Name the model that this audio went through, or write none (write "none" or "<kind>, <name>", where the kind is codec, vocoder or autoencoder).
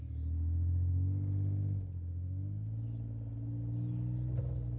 none